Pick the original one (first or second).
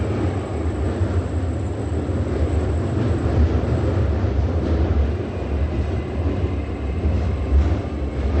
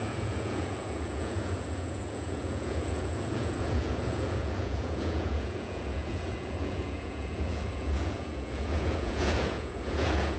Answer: first